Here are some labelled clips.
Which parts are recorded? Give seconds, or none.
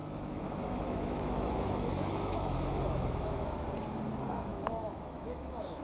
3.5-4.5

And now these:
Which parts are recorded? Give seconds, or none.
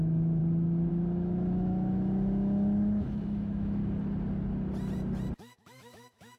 0.4-0.9; 3.8-5.3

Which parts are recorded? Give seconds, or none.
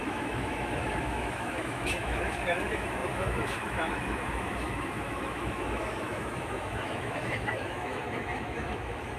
none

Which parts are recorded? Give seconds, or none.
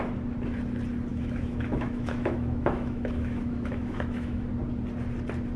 0.0-1.1; 4.5-5.6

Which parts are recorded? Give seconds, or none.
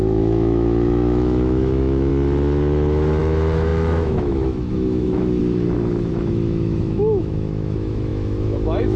2.1-3.2; 5.4-6.1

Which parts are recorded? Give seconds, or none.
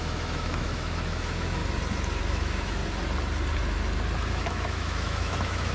1.6-2.2; 2.8-4.3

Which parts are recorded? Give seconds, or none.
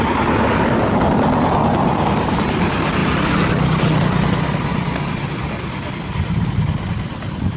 0.0-7.6